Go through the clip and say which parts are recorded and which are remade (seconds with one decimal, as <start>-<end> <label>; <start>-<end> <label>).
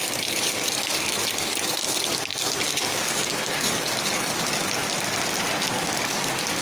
0.0-4.8 remade; 4.8-5.7 recorded; 5.7-6.6 remade